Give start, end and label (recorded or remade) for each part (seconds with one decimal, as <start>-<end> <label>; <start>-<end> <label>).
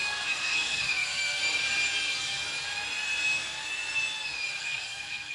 0.0-1.4 remade; 1.4-4.6 recorded; 4.6-5.3 remade